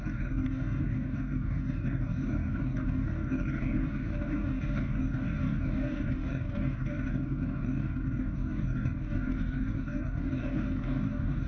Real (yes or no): no